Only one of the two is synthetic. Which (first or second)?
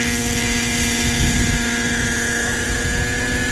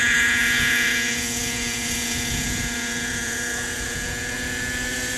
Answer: second